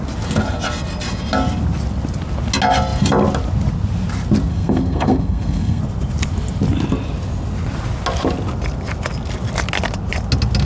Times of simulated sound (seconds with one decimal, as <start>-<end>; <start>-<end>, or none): 4.5-5.8